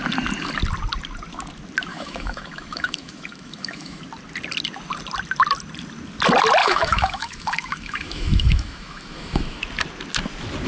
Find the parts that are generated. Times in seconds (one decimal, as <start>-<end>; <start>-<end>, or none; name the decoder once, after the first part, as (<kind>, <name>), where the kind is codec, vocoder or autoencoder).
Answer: 1.9-4.0 (autoencoder, DAC-VAE); 6.6-9.6